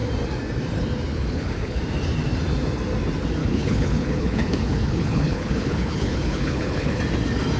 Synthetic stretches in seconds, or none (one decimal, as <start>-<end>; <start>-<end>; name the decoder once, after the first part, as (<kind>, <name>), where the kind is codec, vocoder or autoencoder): 1.1-1.8 (codec, HILCodec); 3.4-7.0